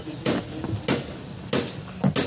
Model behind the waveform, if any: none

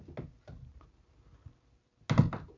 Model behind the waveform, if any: none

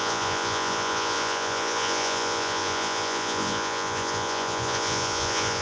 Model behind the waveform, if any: vocoder, Vocos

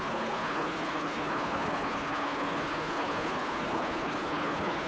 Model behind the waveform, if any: codec, HILCodec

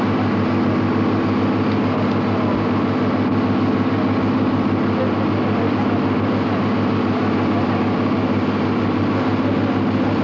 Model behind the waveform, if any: none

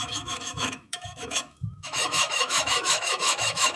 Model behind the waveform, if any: autoencoder, DAC-VAE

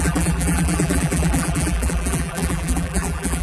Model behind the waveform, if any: vocoder, BigVGAN v2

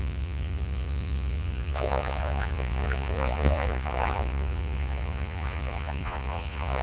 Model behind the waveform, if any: vocoder, Vocos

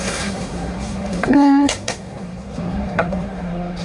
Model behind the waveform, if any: codec, SNAC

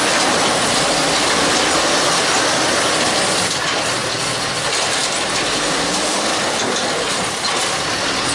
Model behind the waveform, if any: none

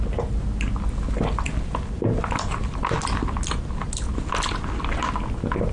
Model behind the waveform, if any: none